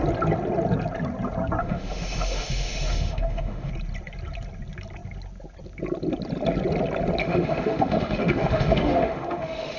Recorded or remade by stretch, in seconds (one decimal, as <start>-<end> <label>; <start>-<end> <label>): 0.0-1.6 recorded; 1.6-3.7 remade; 3.7-7.2 recorded; 7.2-9.8 remade